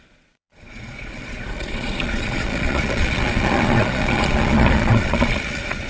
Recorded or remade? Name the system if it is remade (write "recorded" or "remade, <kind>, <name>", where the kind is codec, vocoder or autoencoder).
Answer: remade, vocoder, Vocos